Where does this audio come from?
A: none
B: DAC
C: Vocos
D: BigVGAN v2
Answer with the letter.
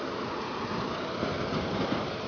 A